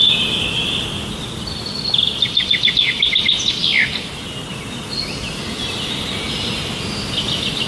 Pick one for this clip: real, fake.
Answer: real